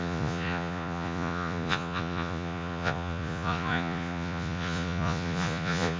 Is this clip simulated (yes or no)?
yes